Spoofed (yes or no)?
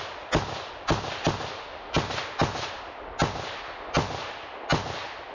no